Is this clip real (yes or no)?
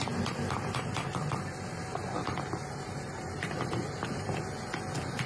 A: yes